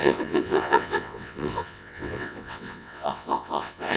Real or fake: fake